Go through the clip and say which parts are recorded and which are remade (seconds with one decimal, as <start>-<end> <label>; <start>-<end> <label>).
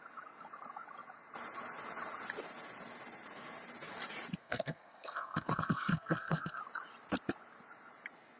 0.0-4.4 recorded; 4.4-6.6 remade; 6.6-8.4 recorded